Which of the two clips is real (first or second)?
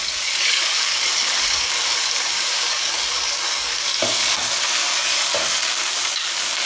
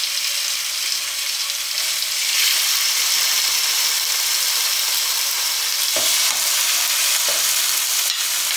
second